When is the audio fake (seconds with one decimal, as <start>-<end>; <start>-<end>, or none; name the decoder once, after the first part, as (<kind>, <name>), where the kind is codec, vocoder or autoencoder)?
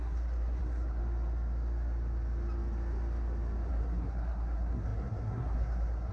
0.0-1.0 (codec, SNAC); 3.7-6.1